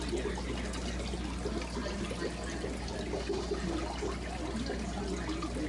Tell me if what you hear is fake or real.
real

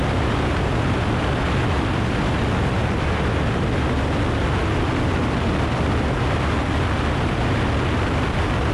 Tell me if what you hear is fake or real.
real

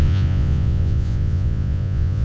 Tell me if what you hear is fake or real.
fake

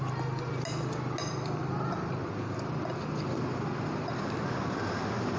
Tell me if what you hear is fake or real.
real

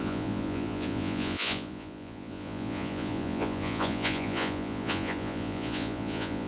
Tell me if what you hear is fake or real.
fake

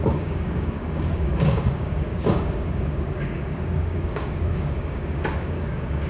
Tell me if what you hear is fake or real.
fake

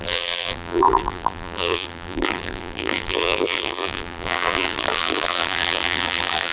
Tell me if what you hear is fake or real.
fake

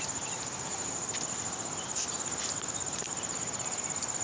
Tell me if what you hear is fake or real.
real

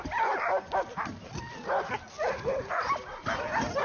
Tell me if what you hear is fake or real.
real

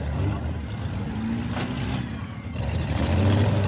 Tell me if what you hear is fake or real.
real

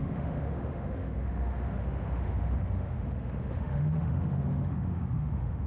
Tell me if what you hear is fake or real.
fake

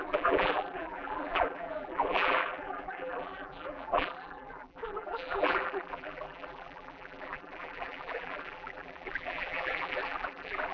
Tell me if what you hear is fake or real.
fake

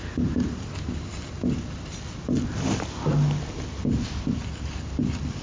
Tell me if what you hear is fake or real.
real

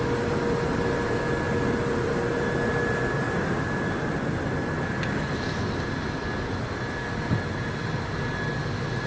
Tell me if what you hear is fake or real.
real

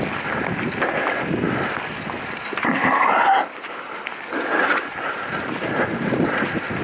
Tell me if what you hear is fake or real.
real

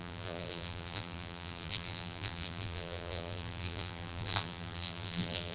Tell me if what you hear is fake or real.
fake